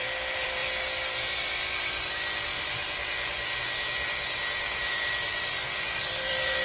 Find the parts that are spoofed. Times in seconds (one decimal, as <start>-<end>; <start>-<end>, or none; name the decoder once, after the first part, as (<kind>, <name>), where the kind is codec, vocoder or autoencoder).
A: 0.0-6.6 (vocoder, BigVGAN v2)